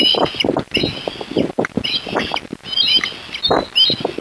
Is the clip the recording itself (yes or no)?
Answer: yes